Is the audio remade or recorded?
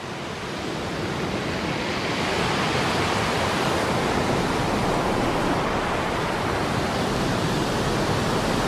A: recorded